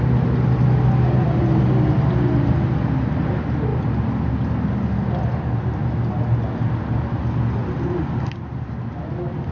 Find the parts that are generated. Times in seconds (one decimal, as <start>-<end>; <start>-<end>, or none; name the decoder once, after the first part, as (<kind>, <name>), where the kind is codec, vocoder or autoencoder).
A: none